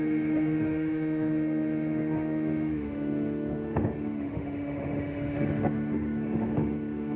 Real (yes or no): no